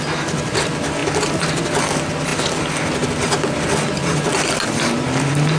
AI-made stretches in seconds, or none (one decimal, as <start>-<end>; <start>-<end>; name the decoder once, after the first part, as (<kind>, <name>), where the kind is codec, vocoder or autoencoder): none